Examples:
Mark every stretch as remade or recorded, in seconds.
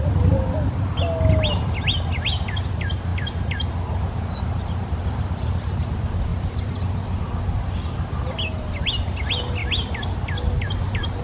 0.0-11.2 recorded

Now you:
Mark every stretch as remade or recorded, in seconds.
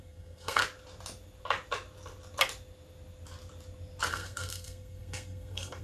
0.0-0.6 remade; 0.6-4.1 recorded; 4.1-5.8 remade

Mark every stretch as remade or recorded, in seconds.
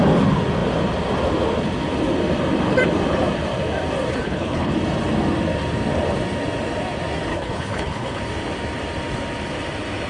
0.0-4.1 recorded; 4.1-4.7 remade; 4.7-7.3 recorded; 7.3-8.2 remade; 8.2-10.1 recorded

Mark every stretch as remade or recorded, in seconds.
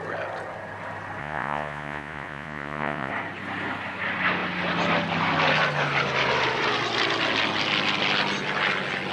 0.0-1.2 recorded; 1.2-3.1 remade; 3.1-9.1 recorded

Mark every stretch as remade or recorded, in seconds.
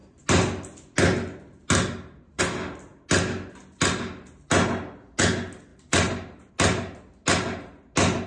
0.0-5.7 recorded; 5.7-6.5 remade; 6.5-8.3 recorded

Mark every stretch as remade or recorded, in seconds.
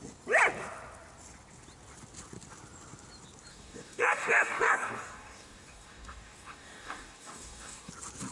0.0-3.5 recorded; 3.5-7.9 remade; 7.9-8.3 recorded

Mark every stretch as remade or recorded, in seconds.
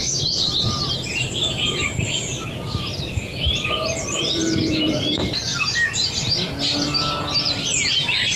0.0-0.9 recorded; 0.9-5.5 remade; 5.5-7.2 recorded; 7.2-8.4 remade